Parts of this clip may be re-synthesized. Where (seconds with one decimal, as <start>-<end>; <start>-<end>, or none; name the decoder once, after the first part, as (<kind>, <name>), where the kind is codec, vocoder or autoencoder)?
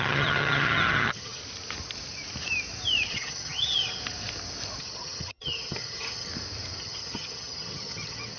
0.0-1.4 (vocoder, HiFi-GAN); 3.1-4.0; 4.8-6.3; 6.8-8.4